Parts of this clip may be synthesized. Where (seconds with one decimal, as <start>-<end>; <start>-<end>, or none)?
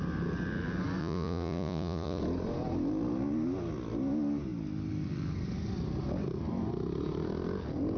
1.0-2.2